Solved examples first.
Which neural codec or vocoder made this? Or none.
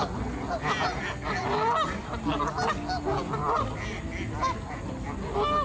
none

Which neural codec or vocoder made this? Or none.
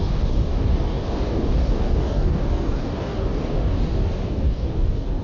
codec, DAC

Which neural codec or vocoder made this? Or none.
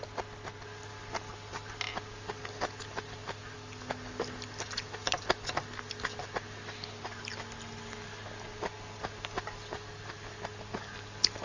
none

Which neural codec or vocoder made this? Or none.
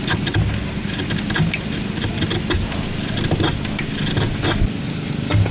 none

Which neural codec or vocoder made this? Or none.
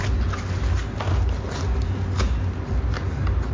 none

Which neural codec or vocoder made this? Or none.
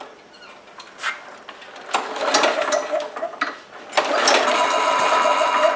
none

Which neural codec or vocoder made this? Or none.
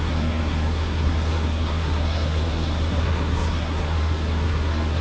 codec, SNAC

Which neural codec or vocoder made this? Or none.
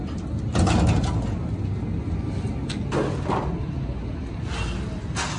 none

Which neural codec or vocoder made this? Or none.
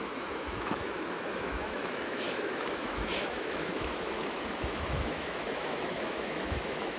autoencoder, DAC-VAE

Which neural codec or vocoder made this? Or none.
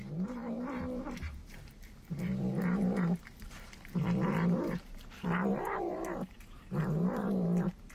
vocoder, BigVGAN v2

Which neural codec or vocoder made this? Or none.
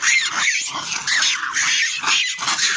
none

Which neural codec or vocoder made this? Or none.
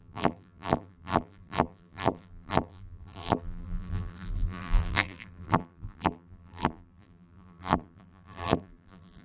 vocoder, BigVGAN v2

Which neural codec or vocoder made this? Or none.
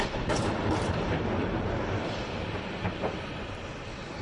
vocoder, BigVGAN v2